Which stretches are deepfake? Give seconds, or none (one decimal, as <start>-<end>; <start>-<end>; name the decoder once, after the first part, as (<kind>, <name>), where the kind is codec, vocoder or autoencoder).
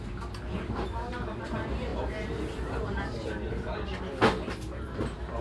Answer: none